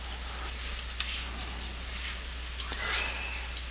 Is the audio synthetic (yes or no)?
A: no